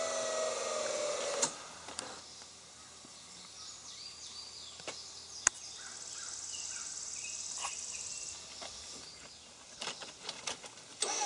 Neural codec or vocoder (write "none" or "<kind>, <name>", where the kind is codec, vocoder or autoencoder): none